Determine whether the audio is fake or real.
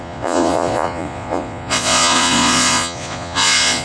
fake